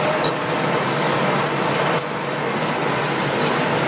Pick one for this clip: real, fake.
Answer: real